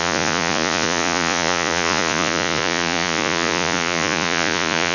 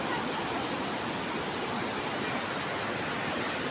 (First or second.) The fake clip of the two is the first